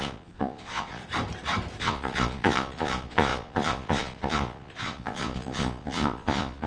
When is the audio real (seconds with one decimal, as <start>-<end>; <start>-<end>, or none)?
1.0-1.8